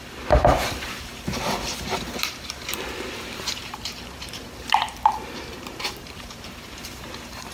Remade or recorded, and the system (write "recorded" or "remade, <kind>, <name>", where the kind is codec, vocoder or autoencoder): remade, vocoder, BigVGAN v2